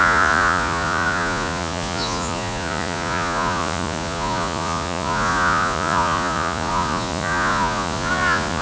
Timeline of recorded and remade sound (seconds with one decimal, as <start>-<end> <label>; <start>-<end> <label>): 0.0-8.6 remade